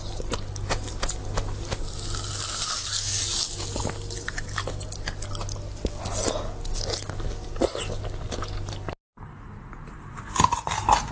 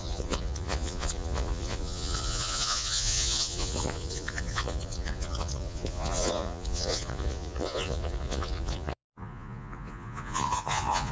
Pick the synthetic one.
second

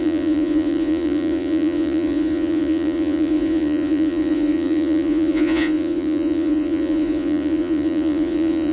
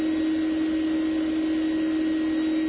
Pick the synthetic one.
first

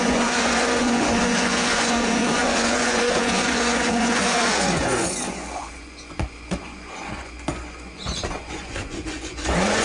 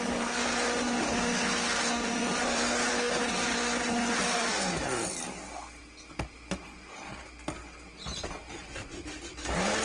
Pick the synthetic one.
first